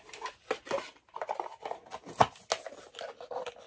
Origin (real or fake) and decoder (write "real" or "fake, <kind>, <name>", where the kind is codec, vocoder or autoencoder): real